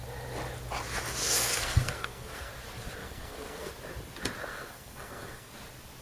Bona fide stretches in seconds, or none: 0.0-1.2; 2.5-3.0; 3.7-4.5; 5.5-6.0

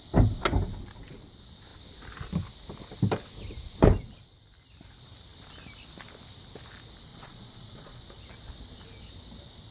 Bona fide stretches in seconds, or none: 0.0-7.1; 8.0-9.7

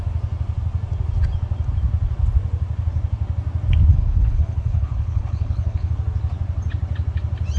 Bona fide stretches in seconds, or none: 0.0-3.9; 5.9-7.6

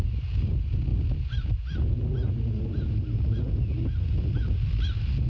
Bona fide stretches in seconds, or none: 0.0-0.9; 1.9-5.3

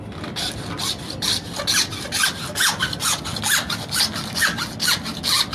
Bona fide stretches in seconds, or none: 0.0-5.5

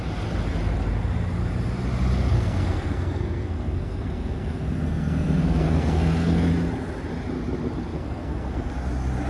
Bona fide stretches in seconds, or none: 0.0-2.3; 6.5-7.9; 8.7-9.3

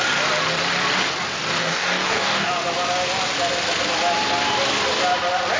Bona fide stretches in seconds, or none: 0.0-1.6; 2.5-5.6